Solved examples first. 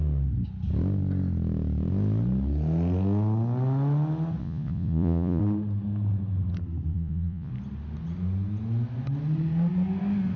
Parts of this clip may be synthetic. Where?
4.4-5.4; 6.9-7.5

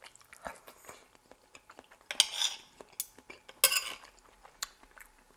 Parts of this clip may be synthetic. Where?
none

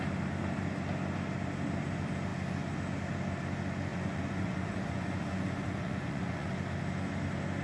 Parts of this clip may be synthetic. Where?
3.9-6.5

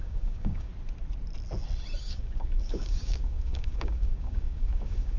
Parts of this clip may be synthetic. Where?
0.0-0.7; 2.0-5.2

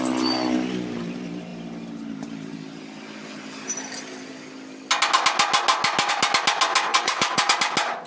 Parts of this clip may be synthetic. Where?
6.9-7.6

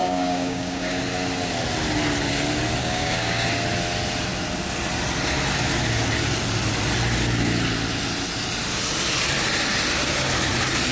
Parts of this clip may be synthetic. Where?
0.0-1.0; 2.8-3.5

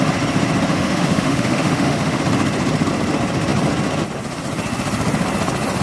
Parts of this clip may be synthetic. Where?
0.7-2.2

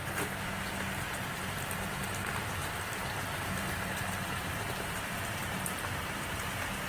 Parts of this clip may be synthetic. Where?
2.6-6.9